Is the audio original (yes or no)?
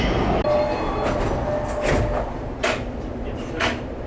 yes